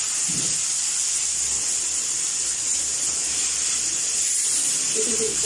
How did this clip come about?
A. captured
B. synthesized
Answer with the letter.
B